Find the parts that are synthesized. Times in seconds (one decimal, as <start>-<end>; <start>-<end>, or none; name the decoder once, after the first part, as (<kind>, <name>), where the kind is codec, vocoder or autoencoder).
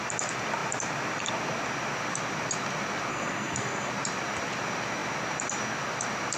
3.1-3.9 (codec, SNAC)